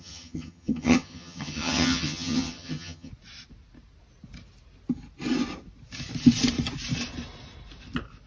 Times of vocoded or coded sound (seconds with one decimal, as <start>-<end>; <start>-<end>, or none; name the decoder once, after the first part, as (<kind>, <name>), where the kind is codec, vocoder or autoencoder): 0.0-3.1 (vocoder, HiFi-GAN)